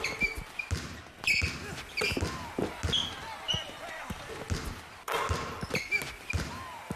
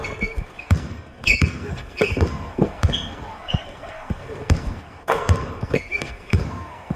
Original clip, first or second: first